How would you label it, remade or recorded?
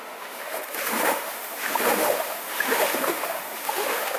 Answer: remade